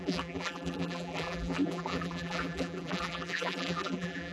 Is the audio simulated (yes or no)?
yes